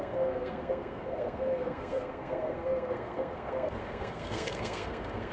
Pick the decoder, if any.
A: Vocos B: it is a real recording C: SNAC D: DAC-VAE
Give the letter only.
C